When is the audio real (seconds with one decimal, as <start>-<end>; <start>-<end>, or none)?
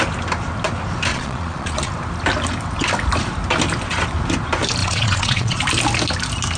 0.0-1.1; 1.9-4.8; 5.6-6.6